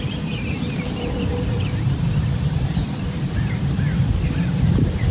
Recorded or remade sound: remade